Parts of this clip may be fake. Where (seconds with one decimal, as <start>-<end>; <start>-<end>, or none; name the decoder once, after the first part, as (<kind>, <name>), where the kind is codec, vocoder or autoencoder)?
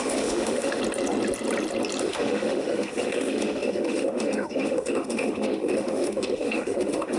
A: 0.0-0.8 (autoencoder, DAC-VAE); 2.0-7.2